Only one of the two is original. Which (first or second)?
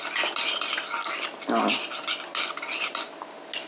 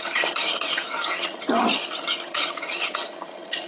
first